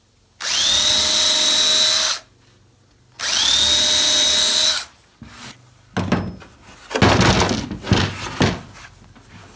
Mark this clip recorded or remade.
recorded